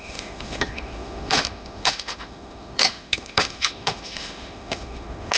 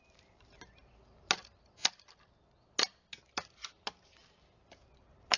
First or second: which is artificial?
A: first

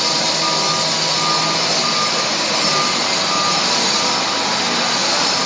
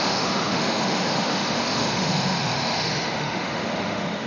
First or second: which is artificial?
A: second